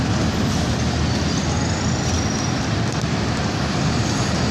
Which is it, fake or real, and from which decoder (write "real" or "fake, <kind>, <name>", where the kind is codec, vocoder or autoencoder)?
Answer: real